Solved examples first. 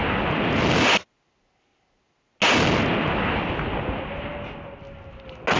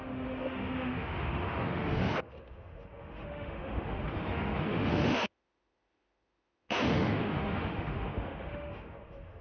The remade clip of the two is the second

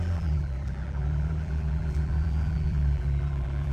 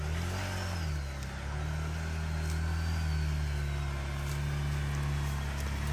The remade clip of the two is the first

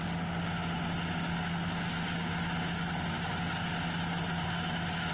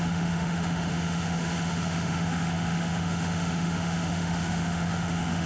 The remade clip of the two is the second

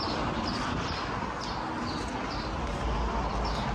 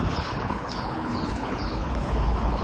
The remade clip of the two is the second